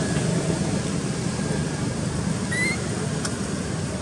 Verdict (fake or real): real